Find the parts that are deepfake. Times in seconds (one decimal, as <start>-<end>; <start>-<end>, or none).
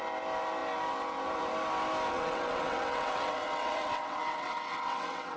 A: 2.1-5.4